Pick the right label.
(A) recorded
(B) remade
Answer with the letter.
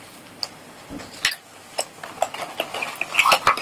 A